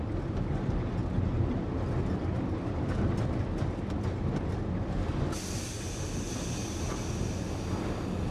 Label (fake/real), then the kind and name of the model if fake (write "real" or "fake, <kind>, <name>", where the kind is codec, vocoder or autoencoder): real